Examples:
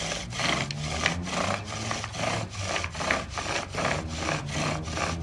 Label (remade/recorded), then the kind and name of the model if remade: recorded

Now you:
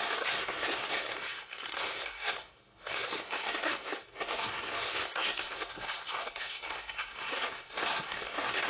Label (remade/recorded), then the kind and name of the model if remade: remade, codec, SNAC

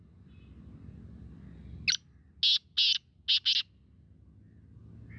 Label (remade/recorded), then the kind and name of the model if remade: recorded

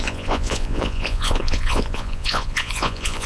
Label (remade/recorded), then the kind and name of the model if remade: remade, vocoder, Vocos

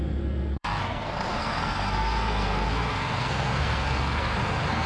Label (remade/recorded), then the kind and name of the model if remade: remade, codec, SNAC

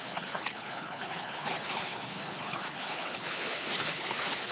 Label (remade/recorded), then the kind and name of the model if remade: remade, codec, HILCodec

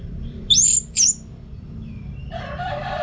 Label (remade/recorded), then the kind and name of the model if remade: remade, vocoder, BigVGAN v2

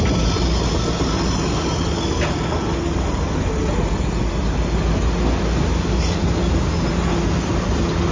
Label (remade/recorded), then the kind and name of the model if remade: recorded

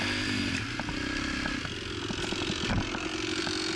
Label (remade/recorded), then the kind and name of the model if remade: recorded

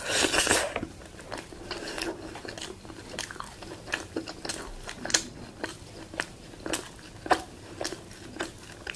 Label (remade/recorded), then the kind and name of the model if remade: recorded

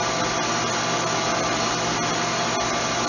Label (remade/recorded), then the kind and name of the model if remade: recorded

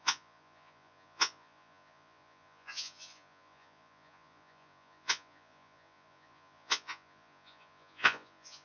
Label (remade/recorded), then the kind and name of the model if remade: remade, vocoder, Vocos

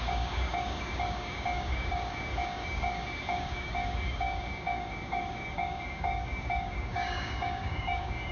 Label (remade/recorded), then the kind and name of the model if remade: remade, codec, DAC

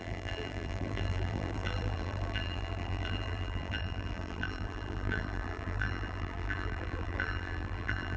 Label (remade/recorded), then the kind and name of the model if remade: remade, vocoder, BigVGAN v2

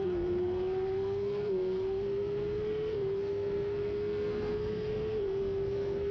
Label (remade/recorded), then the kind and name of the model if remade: remade, codec, SNAC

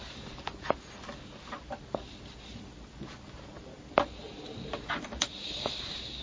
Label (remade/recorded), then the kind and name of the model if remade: remade, vocoder, BigVGAN v2